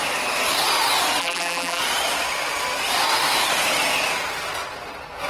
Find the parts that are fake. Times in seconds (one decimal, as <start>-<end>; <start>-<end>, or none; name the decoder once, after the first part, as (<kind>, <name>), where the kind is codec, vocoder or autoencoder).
1.2-1.8 (vocoder, BigVGAN v2)